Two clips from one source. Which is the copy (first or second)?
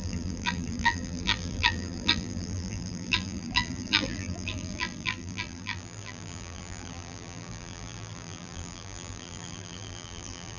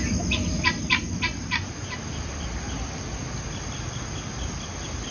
first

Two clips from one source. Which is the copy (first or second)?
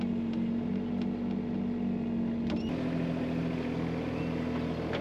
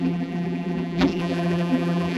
second